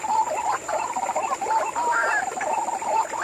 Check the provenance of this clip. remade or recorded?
recorded